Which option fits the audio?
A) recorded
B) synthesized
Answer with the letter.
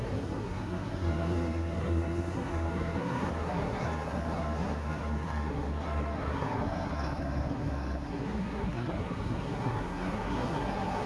B